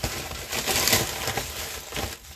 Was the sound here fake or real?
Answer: real